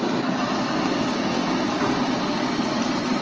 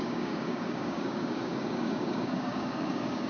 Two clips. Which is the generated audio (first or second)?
second